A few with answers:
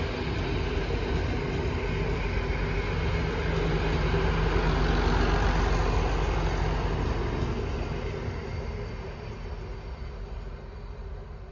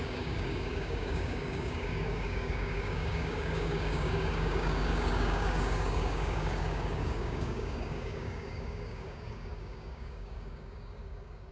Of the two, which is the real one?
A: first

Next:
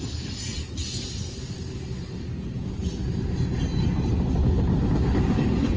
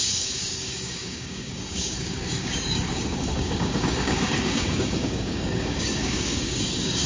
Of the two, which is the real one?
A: first